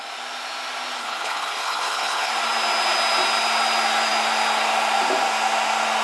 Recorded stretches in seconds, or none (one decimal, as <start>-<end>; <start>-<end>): 0.0-1.0; 2.3-6.0